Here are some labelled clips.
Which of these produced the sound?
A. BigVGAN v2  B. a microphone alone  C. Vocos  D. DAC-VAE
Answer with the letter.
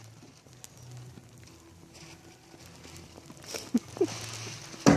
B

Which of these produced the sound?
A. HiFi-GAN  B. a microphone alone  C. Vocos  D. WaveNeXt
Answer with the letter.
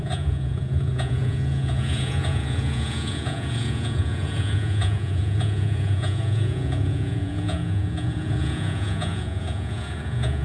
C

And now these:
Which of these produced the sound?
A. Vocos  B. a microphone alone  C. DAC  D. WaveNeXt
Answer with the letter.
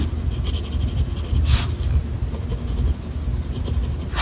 B